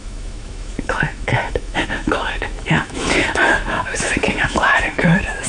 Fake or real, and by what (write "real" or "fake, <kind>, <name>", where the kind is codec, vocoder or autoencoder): fake, autoencoder, DAC-VAE